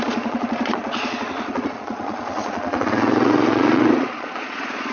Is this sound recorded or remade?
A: remade